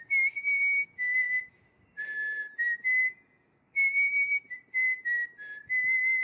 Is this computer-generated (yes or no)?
no